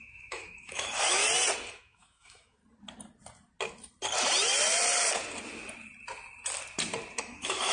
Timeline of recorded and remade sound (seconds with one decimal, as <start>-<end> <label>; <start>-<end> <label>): 0.0-1.2 remade; 1.2-1.7 recorded; 1.7-2.6 remade; 2.6-7.2 recorded; 7.2-7.7 remade